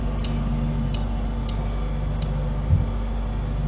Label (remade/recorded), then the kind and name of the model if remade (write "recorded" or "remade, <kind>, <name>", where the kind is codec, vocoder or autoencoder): recorded